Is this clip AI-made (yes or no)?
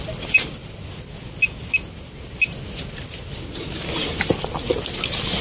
no